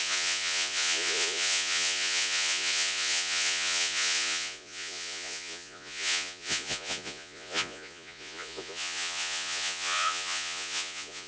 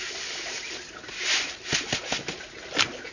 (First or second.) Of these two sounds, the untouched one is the second